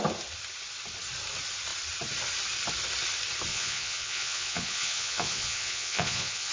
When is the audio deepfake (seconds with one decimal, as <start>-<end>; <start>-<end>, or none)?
3.5-6.5